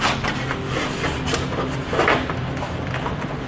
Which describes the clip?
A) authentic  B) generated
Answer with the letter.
A